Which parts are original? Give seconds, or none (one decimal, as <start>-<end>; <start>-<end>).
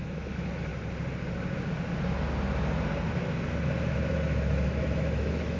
0.7-4.1